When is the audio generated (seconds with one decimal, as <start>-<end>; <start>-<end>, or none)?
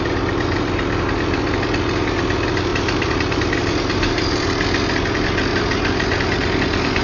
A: 2.7-4.5; 5.5-7.0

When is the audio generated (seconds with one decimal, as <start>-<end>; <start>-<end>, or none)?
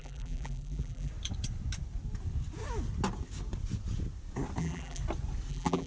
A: 0.0-1.1; 4.6-5.0; 5.5-5.9